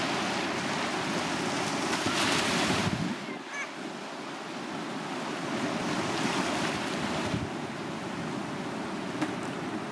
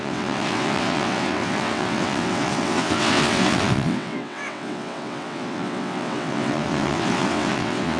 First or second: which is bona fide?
first